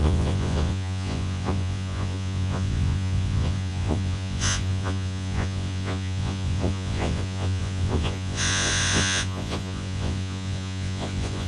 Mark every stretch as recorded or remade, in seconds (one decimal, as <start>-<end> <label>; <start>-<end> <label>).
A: 0.0-11.5 remade